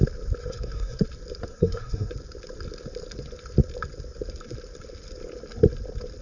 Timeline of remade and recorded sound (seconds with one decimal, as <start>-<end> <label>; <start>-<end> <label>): 0.0-0.4 recorded; 0.4-1.0 remade; 1.0-1.5 recorded; 1.5-2.1 remade; 2.1-6.2 recorded